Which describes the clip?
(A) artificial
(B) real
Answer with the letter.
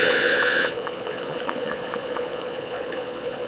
A